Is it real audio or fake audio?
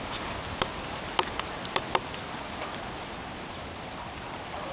real